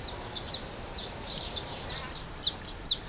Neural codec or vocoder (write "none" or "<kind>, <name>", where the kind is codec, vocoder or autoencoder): none